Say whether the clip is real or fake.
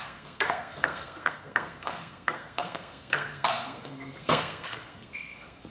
fake